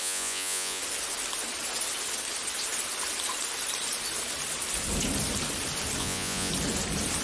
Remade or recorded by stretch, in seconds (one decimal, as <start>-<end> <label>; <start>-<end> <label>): 0.0-0.8 remade; 0.8-6.0 recorded; 6.0-6.5 remade; 6.5-7.2 recorded